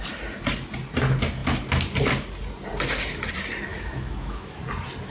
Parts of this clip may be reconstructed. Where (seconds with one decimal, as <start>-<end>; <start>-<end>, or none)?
3.7-4.6